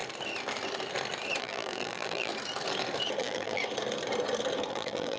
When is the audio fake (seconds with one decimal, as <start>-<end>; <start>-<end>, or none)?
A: 1.4-2.3; 3.2-3.6; 4.7-5.2